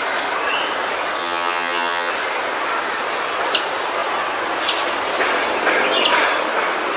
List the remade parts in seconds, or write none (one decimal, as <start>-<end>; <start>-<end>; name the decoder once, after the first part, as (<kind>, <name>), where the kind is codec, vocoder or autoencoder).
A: 1.2-2.1 (vocoder, HiFi-GAN)